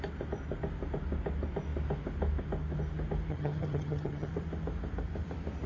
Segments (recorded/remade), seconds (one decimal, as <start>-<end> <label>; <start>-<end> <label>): 0.0-3.3 recorded; 3.3-4.3 remade; 4.3-5.7 recorded